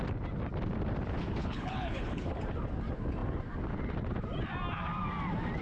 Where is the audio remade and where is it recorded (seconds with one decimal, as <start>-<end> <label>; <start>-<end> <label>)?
0.0-1.4 recorded; 1.4-2.3 remade; 2.3-5.6 recorded